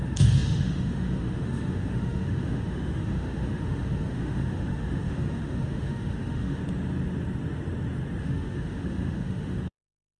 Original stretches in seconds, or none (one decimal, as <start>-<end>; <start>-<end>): 6.6-8.2